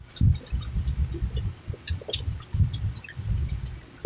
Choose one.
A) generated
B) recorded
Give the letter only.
B